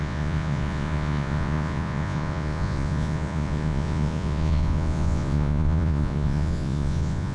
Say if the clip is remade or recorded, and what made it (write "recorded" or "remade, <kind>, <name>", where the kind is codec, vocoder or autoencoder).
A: remade, vocoder, Vocos